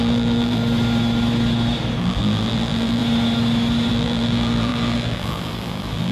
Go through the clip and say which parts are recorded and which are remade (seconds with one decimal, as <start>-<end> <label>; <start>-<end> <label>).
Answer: 0.0-0.6 remade; 0.6-2.0 recorded; 2.0-3.0 remade; 3.0-3.9 recorded; 3.9-6.1 remade